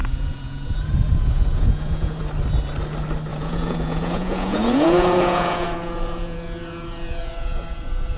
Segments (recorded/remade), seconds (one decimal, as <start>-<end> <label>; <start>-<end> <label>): 0.0-2.2 remade; 2.2-3.3 recorded; 3.3-8.2 remade